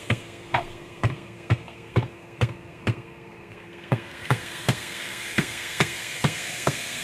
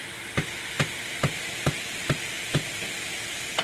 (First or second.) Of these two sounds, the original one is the second